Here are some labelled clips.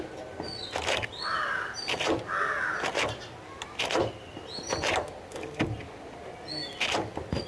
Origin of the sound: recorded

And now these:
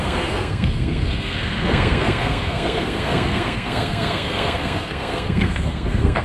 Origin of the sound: remade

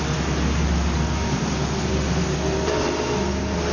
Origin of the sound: recorded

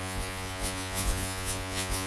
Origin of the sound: remade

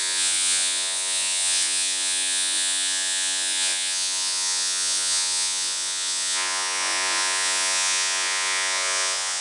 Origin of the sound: remade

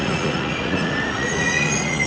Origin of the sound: remade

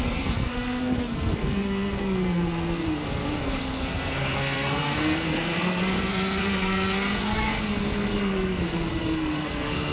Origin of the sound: remade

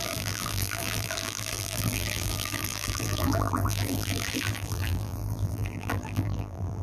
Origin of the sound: remade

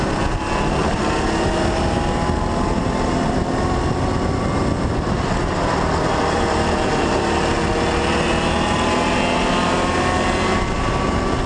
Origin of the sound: recorded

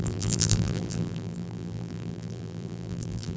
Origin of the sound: remade